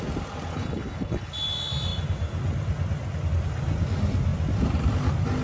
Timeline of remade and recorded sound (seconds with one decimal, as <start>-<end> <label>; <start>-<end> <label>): 0.0-0.5 recorded; 0.5-1.3 remade; 1.3-5.4 recorded